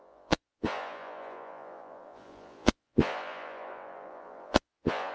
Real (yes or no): no